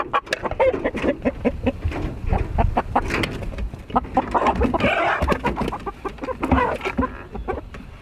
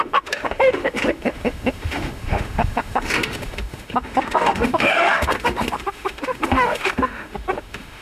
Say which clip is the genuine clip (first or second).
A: first